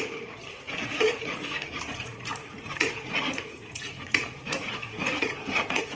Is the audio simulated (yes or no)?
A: yes